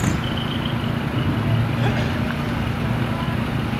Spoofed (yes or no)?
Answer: no